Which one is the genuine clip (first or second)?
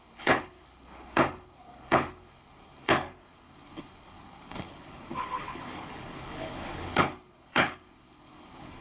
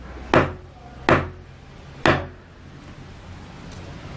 second